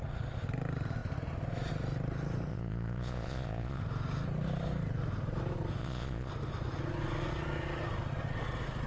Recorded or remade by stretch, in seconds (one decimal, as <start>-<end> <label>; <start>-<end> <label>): 0.0-2.5 recorded; 2.5-3.8 remade; 3.8-5.8 recorded; 5.8-6.3 remade; 6.3-8.9 recorded